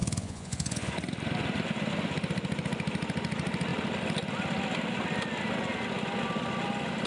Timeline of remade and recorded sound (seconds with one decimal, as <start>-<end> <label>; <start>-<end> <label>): 0.0-0.9 remade; 0.9-7.1 recorded